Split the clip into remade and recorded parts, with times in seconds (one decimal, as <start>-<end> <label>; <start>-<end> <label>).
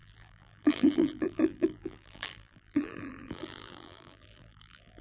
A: 0.0-5.0 remade